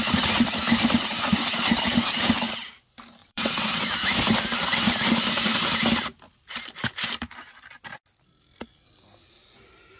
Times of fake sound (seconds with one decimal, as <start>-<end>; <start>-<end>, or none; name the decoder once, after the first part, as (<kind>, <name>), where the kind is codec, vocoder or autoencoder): 3.2-3.8 (vocoder, WaveNeXt)